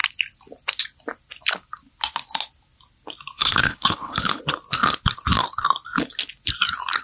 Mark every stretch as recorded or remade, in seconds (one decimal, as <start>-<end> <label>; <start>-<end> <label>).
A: 0.0-3.4 recorded; 3.4-4.4 remade; 4.4-7.0 recorded